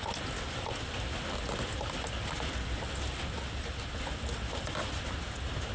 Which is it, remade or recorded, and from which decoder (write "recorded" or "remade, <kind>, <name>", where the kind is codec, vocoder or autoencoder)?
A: recorded